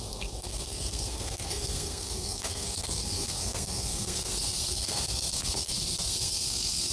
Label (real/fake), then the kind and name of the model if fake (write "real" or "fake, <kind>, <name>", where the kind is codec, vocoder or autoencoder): fake, codec, SNAC